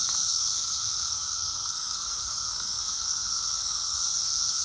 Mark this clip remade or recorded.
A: remade